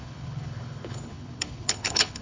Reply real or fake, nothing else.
fake